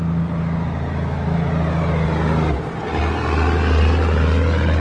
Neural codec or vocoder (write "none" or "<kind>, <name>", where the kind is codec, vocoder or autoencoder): none